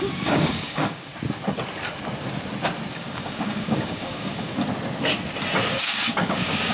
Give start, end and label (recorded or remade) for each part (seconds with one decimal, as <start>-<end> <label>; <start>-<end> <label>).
0.0-1.1 remade; 1.1-2.9 recorded; 2.9-4.5 remade; 4.5-5.7 recorded; 5.7-6.7 remade